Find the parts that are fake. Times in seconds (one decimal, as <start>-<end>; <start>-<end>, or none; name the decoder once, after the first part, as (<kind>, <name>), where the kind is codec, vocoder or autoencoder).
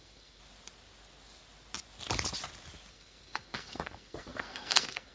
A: 0.0-0.4 (codec, SNAC); 2.9-5.1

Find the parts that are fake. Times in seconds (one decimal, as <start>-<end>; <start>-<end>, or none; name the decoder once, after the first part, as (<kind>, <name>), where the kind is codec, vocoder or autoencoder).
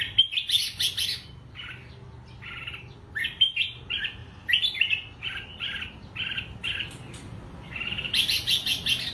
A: none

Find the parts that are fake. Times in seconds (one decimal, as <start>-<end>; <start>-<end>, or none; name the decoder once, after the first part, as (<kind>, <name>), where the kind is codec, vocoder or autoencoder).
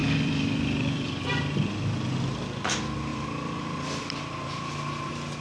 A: 0.0-1.1 (vocoder, BigVGAN v2); 3.1-4.0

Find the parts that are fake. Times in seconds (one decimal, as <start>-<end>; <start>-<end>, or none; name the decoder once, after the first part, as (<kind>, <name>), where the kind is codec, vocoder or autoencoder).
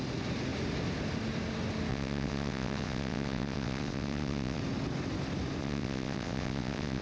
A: 1.9-4.6 (vocoder, WaveNeXt); 5.6-7.0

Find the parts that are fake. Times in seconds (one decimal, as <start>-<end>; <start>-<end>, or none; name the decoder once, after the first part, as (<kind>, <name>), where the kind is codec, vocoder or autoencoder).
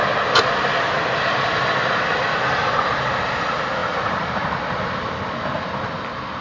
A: none